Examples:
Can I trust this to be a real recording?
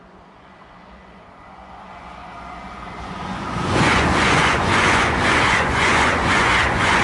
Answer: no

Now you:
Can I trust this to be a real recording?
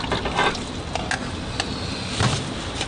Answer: yes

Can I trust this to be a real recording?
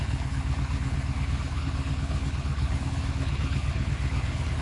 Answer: no